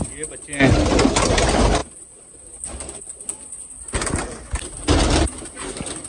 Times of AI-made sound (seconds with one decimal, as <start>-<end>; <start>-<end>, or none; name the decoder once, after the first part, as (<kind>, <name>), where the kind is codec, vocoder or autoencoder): none